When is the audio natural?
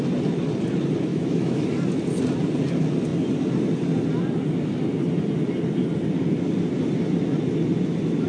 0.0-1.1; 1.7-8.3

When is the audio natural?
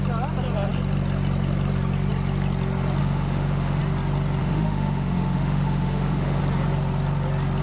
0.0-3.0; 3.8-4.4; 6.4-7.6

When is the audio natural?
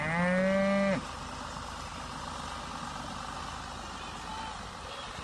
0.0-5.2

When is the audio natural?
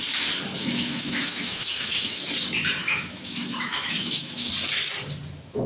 0.0-0.6; 2.3-2.8; 4.5-5.7